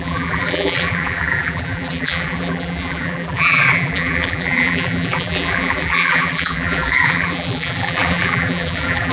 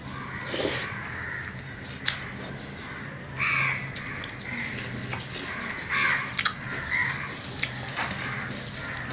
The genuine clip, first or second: second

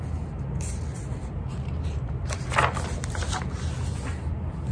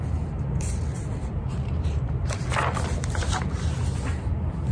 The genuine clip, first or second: first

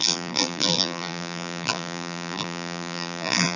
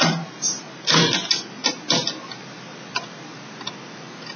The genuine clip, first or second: second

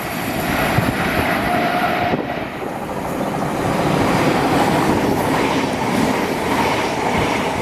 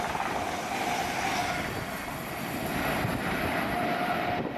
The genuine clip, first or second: second